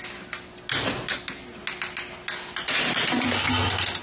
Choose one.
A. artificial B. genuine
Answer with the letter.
B